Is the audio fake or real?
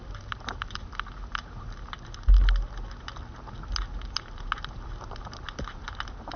real